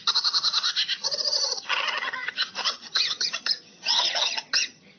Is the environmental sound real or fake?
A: fake